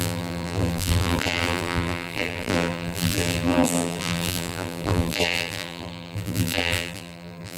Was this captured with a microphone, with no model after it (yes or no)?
no